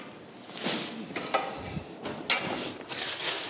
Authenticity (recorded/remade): recorded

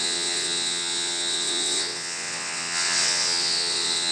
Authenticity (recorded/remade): remade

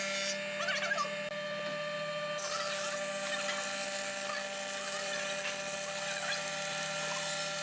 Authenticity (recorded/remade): recorded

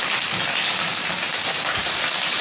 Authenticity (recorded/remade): recorded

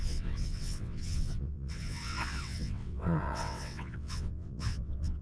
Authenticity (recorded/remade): remade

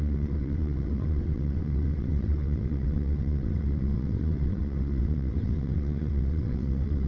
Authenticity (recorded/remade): remade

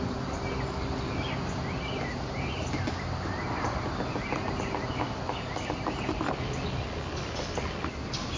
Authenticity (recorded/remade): recorded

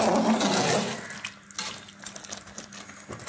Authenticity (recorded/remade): recorded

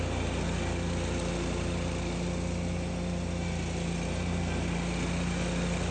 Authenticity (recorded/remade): recorded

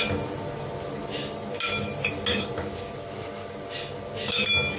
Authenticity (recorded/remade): recorded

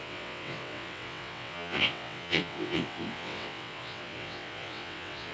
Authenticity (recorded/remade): remade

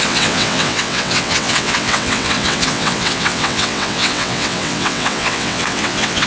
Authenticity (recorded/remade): remade